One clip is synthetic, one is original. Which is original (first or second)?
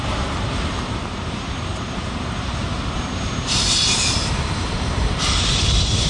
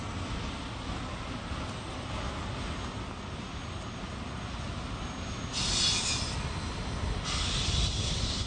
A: second